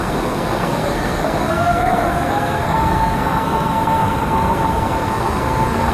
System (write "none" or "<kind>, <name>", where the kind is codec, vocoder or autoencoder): codec, SNAC